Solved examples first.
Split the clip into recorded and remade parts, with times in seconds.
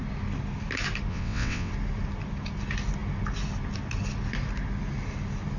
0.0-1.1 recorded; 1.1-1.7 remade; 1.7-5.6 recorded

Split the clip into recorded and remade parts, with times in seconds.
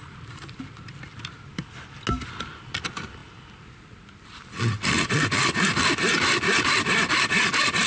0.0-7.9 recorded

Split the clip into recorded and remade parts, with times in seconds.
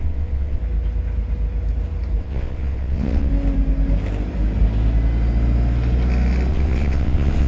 0.0-0.6 remade; 0.6-2.2 recorded; 2.2-3.3 remade; 3.3-6.5 recorded; 6.5-7.5 remade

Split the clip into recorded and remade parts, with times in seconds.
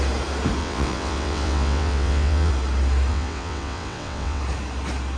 0.0-0.6 recorded; 0.6-2.5 remade; 2.5-3.1 recorded; 3.1-4.4 remade; 4.4-5.2 recorded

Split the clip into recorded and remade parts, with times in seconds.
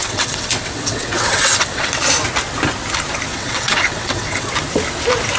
0.0-2.0 remade; 2.0-3.3 recorded; 3.3-4.5 remade; 4.5-5.4 recorded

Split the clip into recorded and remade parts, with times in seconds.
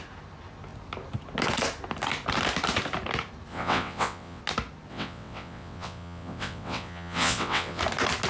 0.0-3.5 recorded; 3.5-4.4 remade; 4.4-4.9 recorded; 4.9-7.8 remade; 7.8-8.3 recorded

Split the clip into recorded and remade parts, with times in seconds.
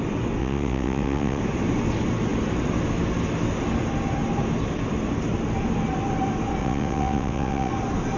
0.0-0.4 recorded; 0.4-1.4 remade; 1.4-6.6 recorded; 6.6-7.7 remade; 7.7-8.2 recorded